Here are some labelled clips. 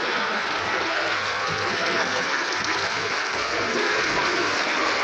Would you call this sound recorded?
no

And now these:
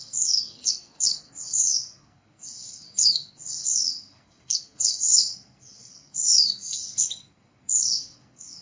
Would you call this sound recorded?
no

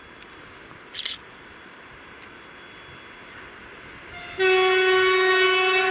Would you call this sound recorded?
yes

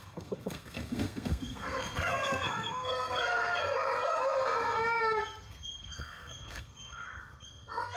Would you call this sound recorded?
no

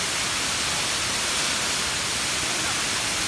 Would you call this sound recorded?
yes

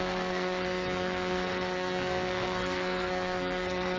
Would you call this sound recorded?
no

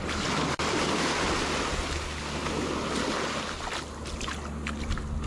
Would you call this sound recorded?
yes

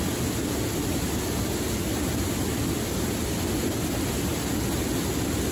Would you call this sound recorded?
yes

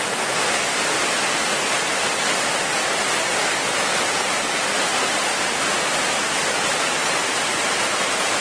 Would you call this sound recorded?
yes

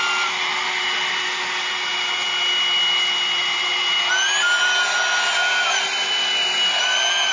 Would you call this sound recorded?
yes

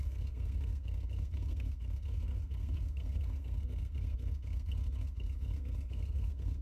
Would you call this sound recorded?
no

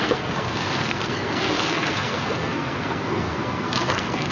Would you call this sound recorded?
no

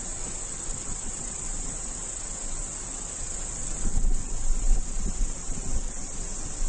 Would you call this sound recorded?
yes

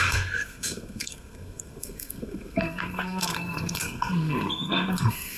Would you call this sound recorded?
no